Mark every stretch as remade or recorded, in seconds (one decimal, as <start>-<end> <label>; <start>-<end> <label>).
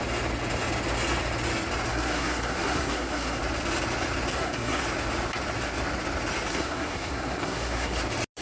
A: 0.0-1.9 recorded; 1.9-3.4 remade; 3.4-4.3 recorded; 4.3-4.8 remade; 4.8-6.5 recorded; 6.5-8.0 remade; 8.0-8.4 recorded